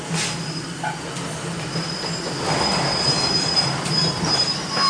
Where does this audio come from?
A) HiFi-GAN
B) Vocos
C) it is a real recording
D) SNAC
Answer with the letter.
C